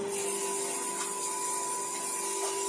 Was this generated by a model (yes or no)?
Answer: no